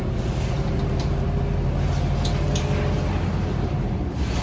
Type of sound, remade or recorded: recorded